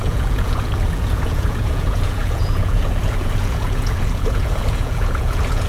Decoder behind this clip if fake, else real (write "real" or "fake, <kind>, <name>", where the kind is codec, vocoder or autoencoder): fake, vocoder, Vocos